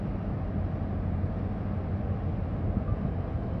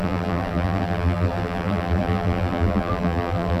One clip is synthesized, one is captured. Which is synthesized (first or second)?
second